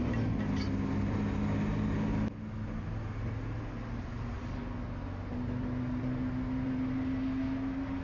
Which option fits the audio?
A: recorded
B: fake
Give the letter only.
A